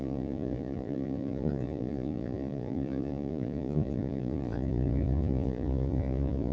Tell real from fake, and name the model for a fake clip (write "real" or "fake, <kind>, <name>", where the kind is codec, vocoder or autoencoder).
fake, vocoder, Vocos